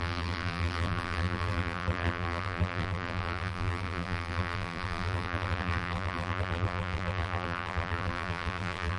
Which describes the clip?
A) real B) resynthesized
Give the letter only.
B